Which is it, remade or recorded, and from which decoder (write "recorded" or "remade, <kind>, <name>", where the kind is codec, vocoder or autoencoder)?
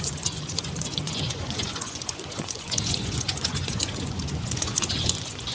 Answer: remade, vocoder, Vocos